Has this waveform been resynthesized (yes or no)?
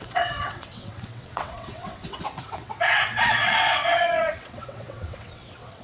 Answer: yes